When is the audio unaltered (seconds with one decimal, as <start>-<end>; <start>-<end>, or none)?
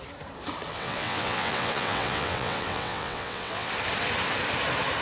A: 0.0-0.7; 3.7-5.0